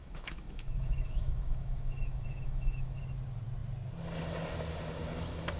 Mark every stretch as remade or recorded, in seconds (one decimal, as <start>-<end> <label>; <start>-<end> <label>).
0.0-3.0 remade; 3.0-5.6 recorded